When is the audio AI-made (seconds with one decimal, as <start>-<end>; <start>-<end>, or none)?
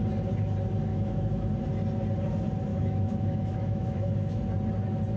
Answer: 0.9-1.5; 2.7-4.4